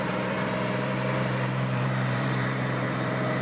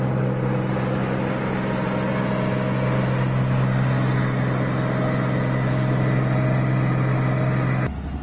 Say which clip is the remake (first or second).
first